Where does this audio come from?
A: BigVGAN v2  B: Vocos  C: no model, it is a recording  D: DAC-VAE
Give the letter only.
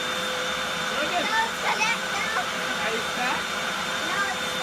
A